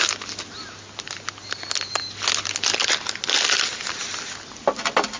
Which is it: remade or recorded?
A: recorded